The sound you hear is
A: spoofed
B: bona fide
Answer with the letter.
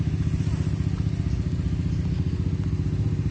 B